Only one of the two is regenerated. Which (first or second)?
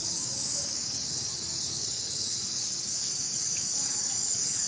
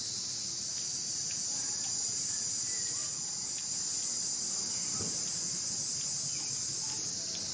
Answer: first